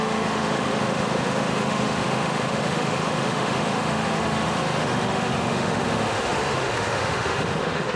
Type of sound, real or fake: fake